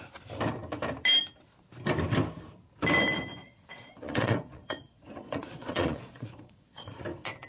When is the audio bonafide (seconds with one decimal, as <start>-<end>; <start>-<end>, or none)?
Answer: 0.0-3.4; 7.0-7.5